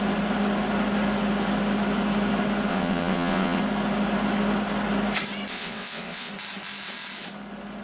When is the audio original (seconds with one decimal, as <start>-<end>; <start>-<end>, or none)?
0.0-2.7; 3.6-5.5; 6.3-7.8